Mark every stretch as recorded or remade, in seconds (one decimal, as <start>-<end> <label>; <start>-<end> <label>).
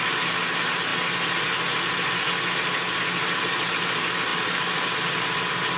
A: 0.0-5.8 recorded